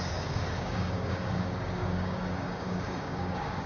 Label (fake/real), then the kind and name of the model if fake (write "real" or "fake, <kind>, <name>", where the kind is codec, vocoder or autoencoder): fake, codec, DAC